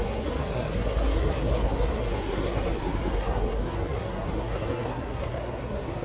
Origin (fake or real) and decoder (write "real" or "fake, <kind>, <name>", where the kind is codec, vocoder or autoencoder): fake, codec, SNAC